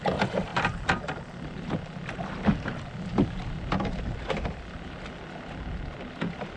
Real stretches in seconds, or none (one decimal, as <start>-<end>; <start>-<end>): 0.0-6.6